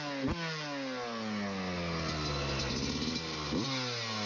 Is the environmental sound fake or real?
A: real